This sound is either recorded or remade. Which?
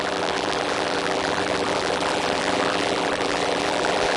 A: remade